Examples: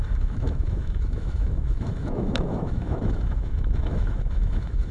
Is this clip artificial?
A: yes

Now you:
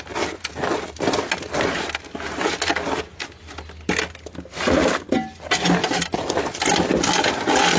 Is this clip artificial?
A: no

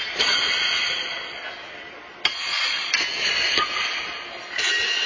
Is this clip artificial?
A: no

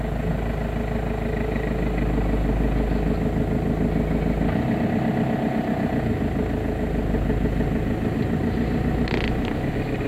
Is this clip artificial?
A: no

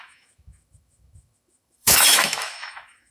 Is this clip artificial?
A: yes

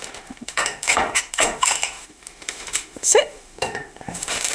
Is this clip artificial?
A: yes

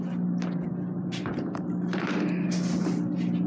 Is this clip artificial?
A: no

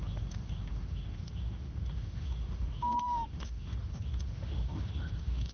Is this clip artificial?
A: yes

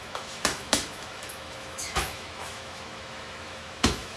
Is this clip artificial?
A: yes